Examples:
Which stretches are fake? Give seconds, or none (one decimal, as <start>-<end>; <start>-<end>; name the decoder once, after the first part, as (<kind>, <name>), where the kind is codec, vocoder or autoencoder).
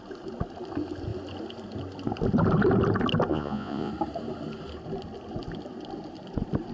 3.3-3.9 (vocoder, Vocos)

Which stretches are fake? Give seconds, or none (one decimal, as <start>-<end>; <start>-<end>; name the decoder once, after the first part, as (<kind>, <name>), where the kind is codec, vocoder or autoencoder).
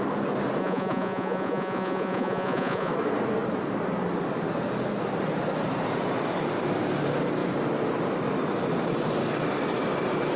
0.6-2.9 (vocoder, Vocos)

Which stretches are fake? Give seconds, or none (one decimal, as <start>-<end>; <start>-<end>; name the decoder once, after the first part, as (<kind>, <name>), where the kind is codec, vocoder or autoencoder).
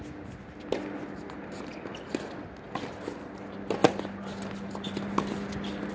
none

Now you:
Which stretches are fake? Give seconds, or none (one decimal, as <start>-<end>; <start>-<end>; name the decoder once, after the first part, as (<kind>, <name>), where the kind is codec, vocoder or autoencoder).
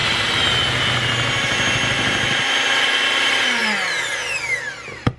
none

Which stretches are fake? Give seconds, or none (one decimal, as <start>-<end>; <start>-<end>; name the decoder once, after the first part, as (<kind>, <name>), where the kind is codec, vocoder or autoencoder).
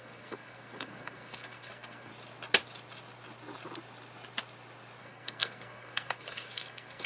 0.0-2.1 (codec, SNAC); 5.0-7.1